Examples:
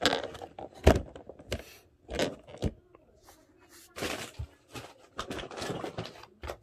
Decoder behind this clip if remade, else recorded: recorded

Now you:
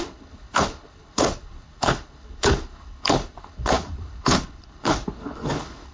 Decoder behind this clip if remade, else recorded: remade, codec, HILCodec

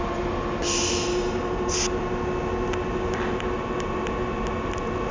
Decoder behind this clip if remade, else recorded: recorded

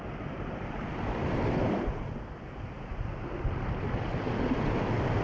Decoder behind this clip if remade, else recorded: recorded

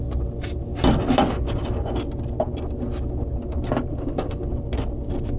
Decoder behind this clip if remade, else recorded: recorded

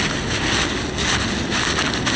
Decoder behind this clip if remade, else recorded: recorded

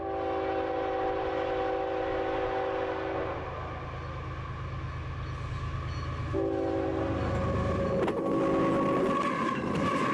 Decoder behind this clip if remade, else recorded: recorded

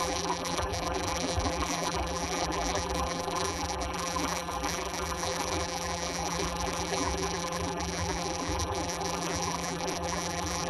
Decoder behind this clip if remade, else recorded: remade, vocoder, BigVGAN v2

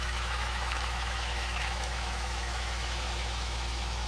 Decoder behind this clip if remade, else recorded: remade, autoencoder, DAC-VAE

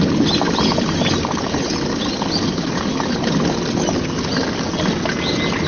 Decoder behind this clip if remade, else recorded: recorded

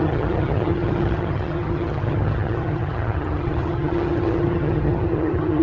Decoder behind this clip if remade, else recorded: remade, vocoder, HiFi-GAN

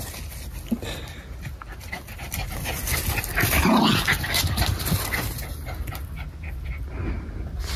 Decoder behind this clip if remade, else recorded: recorded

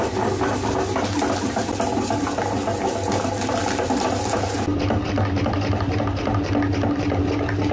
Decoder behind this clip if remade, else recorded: recorded